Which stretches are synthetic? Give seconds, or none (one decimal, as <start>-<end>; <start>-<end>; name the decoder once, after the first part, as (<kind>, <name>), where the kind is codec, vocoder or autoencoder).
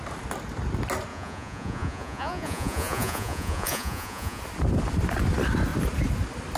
1.1-4.4 (vocoder, Vocos)